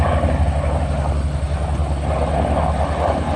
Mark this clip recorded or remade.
recorded